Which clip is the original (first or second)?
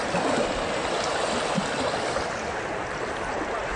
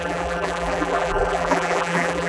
first